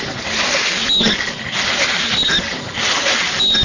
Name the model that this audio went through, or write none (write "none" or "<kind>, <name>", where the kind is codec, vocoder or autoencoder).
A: none